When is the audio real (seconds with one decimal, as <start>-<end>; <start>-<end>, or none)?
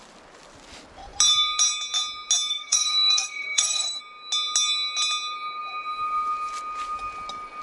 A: 0.0-2.5; 4.0-7.6